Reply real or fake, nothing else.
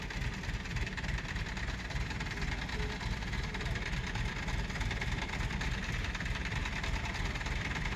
real